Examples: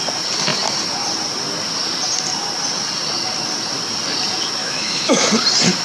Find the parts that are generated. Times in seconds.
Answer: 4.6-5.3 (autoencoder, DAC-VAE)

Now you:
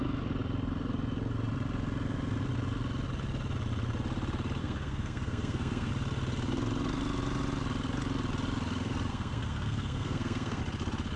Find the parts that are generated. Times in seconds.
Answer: 4.6-5.9 (codec, SNAC); 9.1-10.6

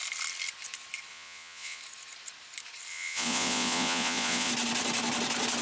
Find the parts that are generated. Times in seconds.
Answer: 1.1-1.8 (vocoder, Vocos); 2.9-4.5

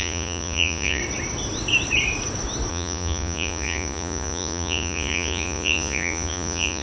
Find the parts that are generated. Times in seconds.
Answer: 0.0-1.0 (vocoder, Vocos); 2.7-6.8

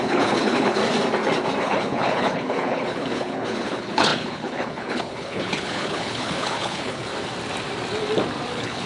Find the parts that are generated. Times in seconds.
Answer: 0.0-0.8 (codec, HILCodec); 1.6-7.1; 8.5-8.9